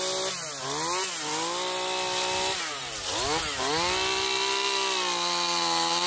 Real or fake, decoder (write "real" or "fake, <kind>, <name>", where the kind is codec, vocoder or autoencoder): real